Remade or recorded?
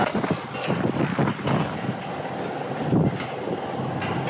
recorded